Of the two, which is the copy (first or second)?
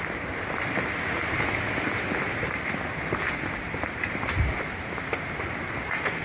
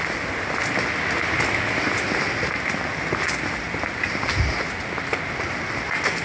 first